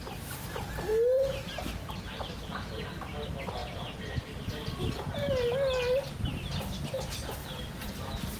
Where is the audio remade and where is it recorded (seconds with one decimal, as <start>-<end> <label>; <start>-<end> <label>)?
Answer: 0.0-8.4 recorded